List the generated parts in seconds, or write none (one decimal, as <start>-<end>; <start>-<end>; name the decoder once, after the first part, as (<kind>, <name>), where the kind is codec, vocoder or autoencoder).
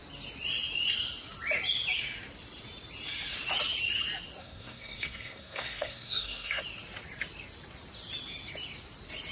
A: 4.4-6.6 (codec, SNAC)